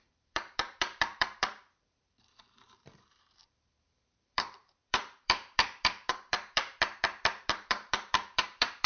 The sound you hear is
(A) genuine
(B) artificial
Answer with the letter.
B